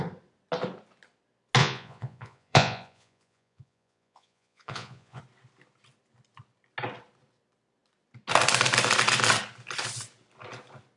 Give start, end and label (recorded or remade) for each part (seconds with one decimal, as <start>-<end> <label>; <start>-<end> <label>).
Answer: 0.0-1.6 recorded; 1.6-5.2 remade; 5.2-11.0 recorded